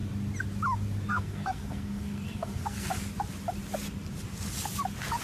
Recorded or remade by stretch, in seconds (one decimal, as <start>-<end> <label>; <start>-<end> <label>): 0.0-1.1 recorded; 1.1-2.9 remade; 2.9-5.2 recorded